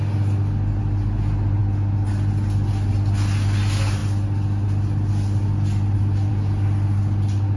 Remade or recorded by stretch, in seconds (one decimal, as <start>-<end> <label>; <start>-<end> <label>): 0.0-7.6 recorded